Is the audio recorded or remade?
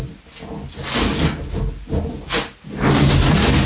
recorded